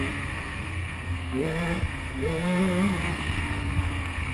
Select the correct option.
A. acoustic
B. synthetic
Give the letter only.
B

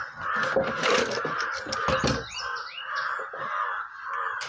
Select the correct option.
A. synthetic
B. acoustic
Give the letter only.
B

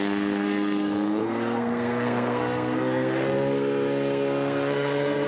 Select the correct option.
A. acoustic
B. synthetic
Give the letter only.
B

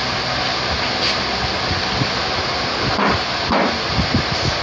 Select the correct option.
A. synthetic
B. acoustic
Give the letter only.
B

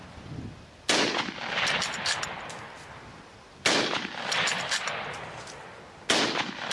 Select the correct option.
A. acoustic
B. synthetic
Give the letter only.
A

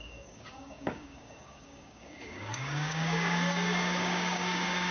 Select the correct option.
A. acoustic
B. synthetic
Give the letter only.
B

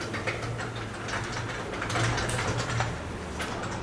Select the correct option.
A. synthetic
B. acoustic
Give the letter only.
B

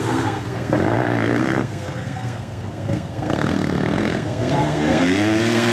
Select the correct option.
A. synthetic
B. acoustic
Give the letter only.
A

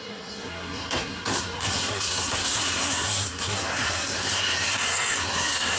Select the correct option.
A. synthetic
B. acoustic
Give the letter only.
A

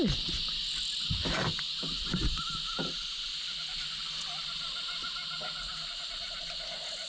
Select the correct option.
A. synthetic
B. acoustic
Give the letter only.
B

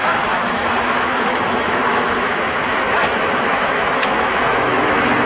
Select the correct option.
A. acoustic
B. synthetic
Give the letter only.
B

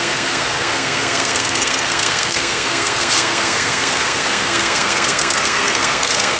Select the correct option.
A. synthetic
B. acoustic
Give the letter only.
A